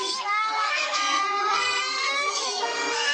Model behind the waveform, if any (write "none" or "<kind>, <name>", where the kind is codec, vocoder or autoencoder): codec, SNAC